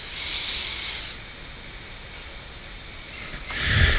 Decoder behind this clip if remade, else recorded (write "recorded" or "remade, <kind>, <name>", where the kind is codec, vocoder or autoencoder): recorded